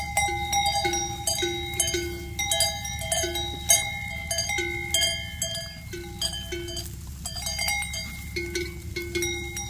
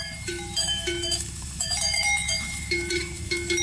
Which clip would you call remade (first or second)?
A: second